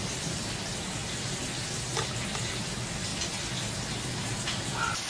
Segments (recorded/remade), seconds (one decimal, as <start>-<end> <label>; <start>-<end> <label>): 0.0-5.1 recorded